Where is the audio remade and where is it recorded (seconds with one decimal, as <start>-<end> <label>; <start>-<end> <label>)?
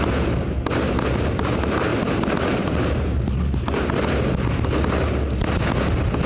0.0-6.3 recorded